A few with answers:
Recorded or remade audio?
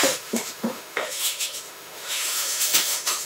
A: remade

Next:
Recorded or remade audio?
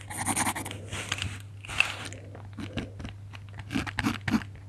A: recorded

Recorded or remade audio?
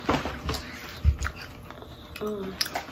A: recorded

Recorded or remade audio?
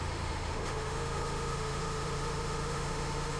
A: remade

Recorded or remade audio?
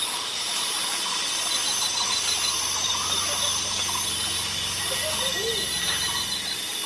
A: recorded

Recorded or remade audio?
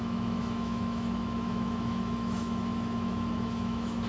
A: remade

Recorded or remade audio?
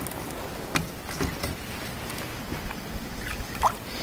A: recorded